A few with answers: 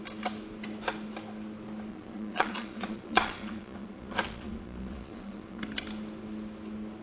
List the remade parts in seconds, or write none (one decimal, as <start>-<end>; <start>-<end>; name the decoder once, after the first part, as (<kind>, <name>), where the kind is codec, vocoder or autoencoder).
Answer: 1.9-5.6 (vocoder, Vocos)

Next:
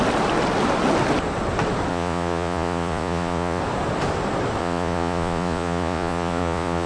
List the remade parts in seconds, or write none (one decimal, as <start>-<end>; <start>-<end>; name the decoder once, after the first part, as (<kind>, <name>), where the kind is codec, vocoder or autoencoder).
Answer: 1.9-3.6 (vocoder, Vocos); 4.6-6.9

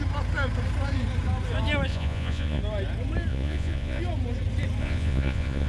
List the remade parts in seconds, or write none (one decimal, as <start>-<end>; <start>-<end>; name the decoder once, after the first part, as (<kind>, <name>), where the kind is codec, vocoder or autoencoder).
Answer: 1.9-2.6 (vocoder, Vocos); 3.3-4.0; 4.8-5.7

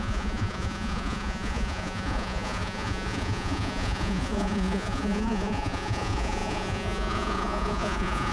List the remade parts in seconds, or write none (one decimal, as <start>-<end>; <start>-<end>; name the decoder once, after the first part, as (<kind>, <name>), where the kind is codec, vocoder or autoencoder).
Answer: 0.0-8.3 (vocoder, Vocos)

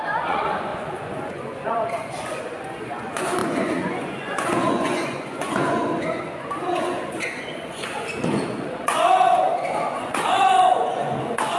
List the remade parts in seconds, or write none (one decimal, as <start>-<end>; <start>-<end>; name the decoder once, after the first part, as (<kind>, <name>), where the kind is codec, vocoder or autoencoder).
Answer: 0.0-11.6 (vocoder, Vocos)

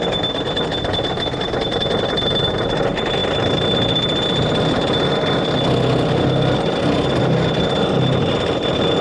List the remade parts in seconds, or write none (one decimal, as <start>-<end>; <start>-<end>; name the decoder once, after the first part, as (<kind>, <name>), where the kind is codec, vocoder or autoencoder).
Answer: none

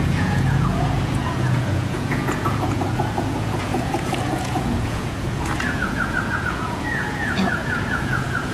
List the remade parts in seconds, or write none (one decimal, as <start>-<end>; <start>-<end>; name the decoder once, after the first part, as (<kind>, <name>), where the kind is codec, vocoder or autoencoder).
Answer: 0.0-8.5 (vocoder, Vocos)

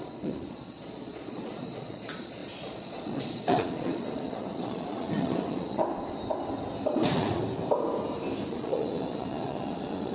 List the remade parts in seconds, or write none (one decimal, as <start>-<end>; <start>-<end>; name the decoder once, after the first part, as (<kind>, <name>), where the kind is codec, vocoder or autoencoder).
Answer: 0.0-5.8 (vocoder, Vocos); 6.9-7.4; 8.5-10.1